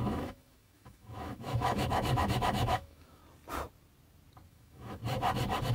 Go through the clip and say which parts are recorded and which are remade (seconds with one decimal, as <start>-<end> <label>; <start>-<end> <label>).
0.0-3.2 remade; 3.2-4.5 recorded; 4.5-5.0 remade; 5.0-5.7 recorded